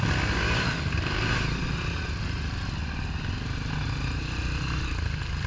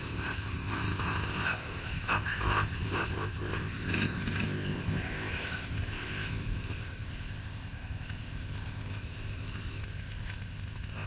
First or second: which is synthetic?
second